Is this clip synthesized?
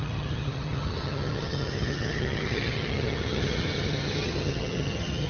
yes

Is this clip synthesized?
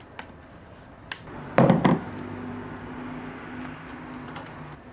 yes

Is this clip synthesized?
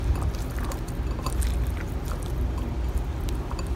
no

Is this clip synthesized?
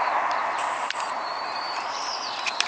yes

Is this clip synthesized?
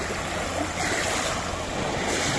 no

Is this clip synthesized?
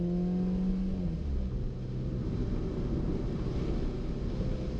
no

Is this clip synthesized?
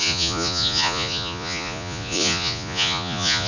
yes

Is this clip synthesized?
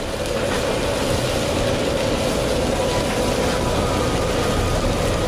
no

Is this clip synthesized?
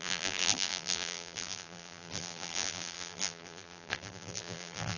yes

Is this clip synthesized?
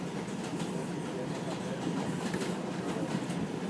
no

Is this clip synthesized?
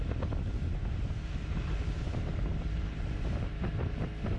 no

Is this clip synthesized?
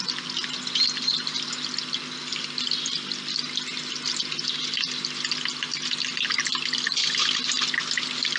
no